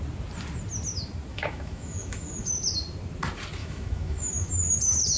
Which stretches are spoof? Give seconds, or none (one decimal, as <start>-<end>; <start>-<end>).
1.3-2.5; 3.6-4.5